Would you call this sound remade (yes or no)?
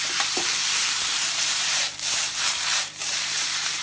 yes